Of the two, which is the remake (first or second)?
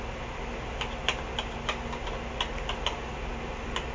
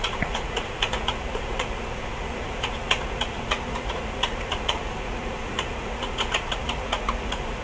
second